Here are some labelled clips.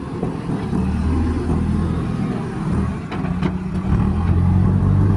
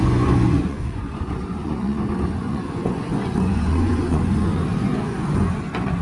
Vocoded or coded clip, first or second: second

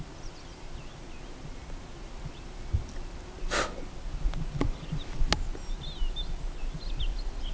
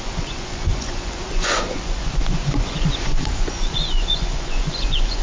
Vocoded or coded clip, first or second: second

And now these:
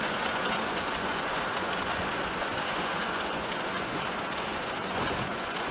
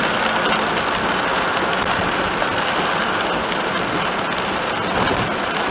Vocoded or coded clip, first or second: first